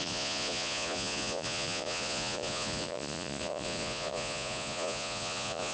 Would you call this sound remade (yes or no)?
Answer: yes